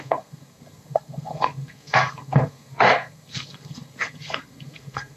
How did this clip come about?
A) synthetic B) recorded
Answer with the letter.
A